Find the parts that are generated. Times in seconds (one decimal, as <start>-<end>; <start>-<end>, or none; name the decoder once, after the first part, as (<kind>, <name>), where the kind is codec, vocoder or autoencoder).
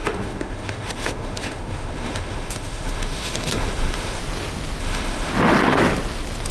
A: 0.0-4.2 (autoencoder, DAC-VAE); 4.8-5.3